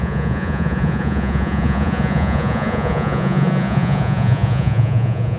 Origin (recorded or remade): remade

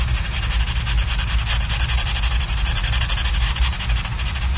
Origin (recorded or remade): recorded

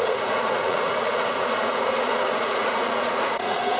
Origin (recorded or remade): remade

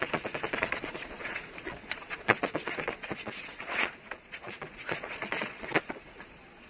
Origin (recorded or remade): remade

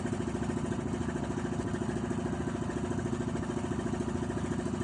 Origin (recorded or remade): recorded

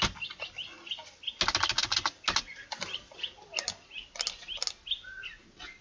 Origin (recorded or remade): recorded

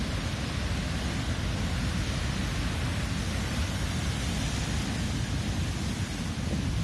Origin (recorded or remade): recorded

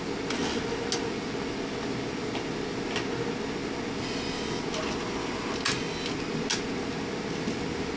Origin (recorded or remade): recorded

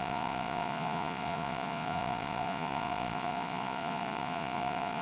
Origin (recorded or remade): remade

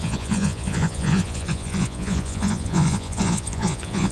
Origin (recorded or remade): remade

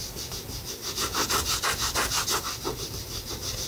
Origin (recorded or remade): recorded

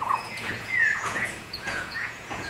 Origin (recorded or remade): remade